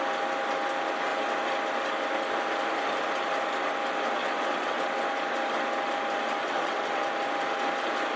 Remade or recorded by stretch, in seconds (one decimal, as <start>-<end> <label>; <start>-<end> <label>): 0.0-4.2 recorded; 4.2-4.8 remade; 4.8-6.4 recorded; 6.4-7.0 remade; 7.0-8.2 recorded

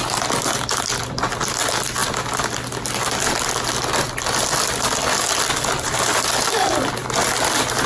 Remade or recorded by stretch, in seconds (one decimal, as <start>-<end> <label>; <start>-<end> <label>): 0.0-7.9 recorded

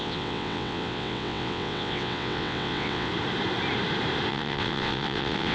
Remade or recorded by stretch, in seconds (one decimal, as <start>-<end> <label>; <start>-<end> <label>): 0.0-3.1 remade; 3.1-4.3 recorded; 4.3-5.5 remade